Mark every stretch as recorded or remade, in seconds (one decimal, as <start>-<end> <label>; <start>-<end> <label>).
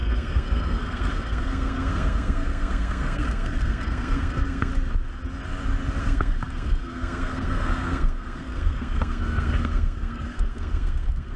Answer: 0.0-4.7 remade; 4.7-6.0 recorded; 6.0-11.4 remade